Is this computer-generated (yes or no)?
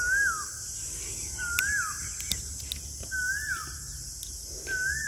no